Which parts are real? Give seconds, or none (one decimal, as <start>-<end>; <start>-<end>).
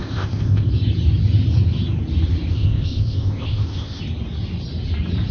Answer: 0.7-2.5; 4.0-5.3